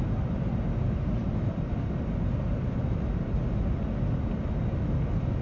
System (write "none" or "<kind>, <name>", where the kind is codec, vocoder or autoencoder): none